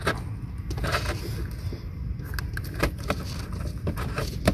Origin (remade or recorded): recorded